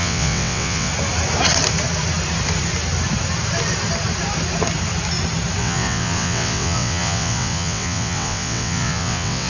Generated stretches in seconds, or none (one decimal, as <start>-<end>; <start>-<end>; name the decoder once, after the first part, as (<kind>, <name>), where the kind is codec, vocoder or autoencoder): 0.0-0.9 (vocoder, WaveNeXt); 5.6-9.5